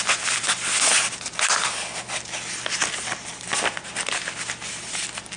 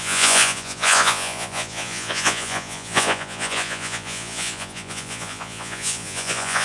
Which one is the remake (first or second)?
second